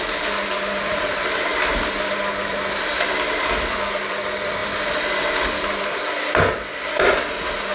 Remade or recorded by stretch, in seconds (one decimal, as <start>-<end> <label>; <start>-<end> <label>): 0.0-7.7 recorded